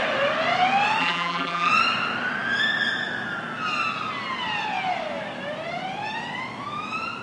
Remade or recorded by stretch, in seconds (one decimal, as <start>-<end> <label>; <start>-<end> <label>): 0.0-1.0 recorded; 1.0-1.7 remade; 1.7-7.2 recorded